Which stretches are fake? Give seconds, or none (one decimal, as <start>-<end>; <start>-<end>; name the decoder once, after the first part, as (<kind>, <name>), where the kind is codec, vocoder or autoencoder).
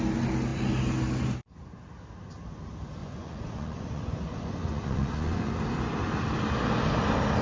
3.0-5.5 (vocoder, Vocos)